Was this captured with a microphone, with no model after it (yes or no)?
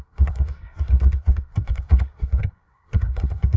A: no